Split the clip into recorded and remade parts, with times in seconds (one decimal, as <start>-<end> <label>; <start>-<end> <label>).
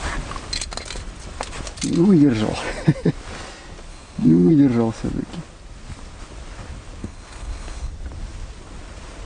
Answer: 0.0-3.9 recorded; 3.9-4.5 remade; 4.5-7.0 recorded; 7.0-7.9 remade; 7.9-9.3 recorded